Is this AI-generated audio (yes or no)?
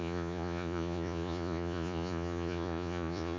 yes